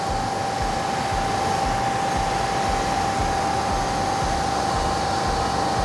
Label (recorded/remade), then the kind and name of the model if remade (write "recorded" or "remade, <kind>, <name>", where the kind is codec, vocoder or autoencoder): recorded